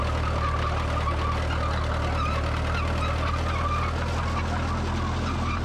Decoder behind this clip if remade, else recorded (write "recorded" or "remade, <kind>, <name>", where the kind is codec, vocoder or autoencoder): recorded